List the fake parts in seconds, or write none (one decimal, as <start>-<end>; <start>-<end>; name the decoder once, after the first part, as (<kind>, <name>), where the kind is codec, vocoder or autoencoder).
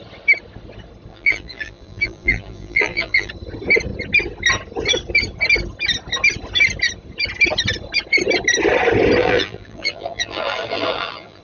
1.1-3.3 (vocoder, BigVGAN v2); 9.2-11.4